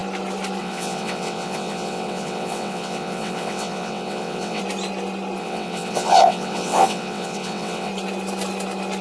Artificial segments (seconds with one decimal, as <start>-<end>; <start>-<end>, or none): 0.6-4.6; 5.4-7.9